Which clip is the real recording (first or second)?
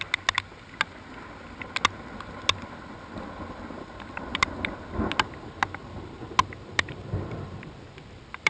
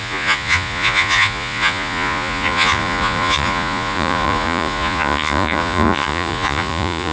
first